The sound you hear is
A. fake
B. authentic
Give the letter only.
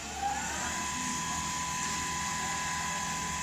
B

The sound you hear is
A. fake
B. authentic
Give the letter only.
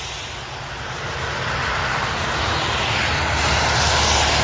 B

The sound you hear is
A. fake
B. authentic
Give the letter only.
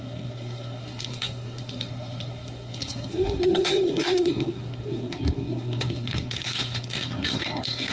A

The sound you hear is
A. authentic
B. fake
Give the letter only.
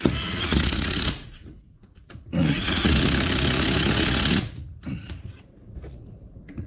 B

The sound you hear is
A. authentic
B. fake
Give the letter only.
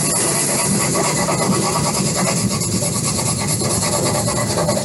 A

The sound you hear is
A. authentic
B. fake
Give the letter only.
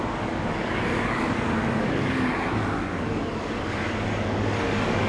B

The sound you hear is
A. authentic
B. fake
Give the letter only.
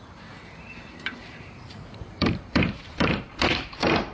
B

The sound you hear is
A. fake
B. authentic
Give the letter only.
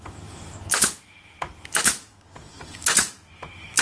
A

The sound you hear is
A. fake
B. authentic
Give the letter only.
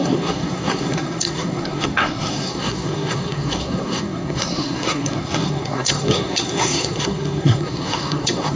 A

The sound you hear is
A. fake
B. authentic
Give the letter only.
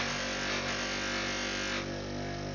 B